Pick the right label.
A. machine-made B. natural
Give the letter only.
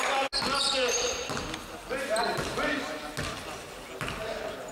B